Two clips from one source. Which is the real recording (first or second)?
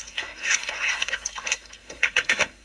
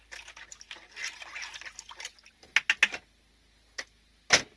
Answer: second